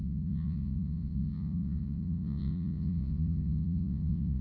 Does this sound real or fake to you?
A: fake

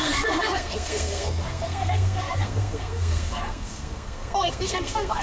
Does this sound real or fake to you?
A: fake